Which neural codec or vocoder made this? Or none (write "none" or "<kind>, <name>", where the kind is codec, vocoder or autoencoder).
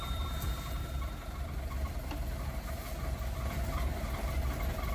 vocoder, BigVGAN v2